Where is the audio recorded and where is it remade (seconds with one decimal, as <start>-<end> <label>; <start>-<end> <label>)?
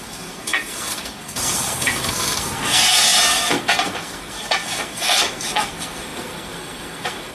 0.0-7.3 remade